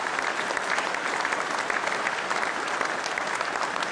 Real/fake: real